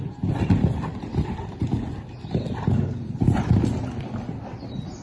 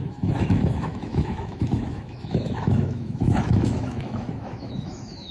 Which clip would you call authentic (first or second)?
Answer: first